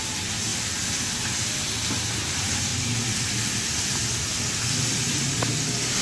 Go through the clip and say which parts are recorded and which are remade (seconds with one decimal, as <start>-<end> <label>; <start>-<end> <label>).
0.0-0.5 remade; 0.5-1.1 recorded; 1.1-2.7 remade; 2.7-5.3 recorded; 5.3-6.0 remade